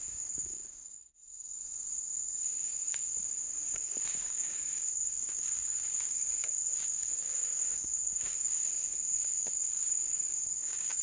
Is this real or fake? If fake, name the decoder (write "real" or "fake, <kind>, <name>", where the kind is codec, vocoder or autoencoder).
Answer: fake, codec, DAC